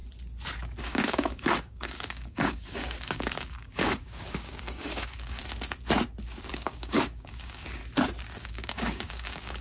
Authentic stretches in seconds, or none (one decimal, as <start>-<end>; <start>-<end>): 0.0-0.8; 5.4-6.5; 7.8-8.4